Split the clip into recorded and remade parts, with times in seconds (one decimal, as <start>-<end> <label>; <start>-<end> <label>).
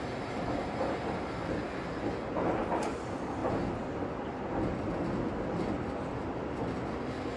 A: 0.0-7.4 recorded